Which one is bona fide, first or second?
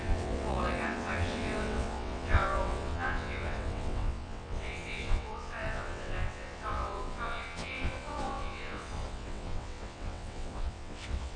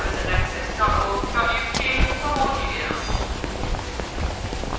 second